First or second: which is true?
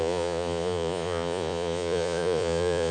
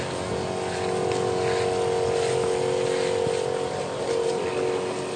second